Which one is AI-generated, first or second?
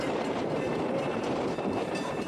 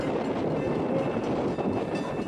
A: first